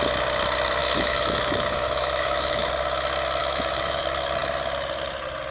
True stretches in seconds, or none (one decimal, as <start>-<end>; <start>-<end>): 0.0-0.8; 2.7-3.4; 4.0-5.5